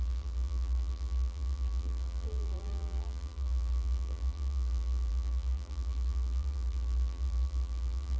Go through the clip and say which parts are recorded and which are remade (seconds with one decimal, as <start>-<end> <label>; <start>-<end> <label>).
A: 0.0-8.2 remade